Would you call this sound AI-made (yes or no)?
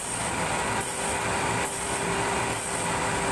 no